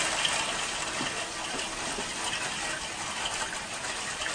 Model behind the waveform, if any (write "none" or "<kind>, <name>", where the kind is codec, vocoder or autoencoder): none